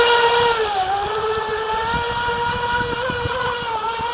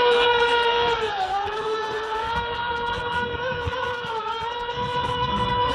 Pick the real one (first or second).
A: first